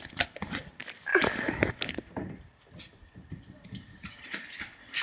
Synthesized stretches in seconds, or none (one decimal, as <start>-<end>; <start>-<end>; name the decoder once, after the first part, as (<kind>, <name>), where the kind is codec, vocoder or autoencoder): none